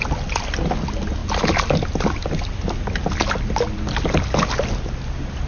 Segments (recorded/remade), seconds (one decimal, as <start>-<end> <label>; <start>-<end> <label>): 0.0-5.5 recorded